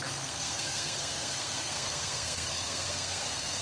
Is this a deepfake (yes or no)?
yes